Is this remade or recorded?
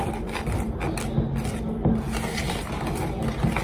recorded